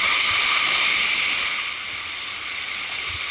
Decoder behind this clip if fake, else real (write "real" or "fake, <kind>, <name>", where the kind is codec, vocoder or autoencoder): real